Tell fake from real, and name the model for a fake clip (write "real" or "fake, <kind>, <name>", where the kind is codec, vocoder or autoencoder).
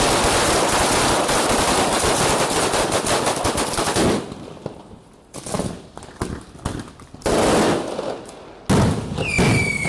real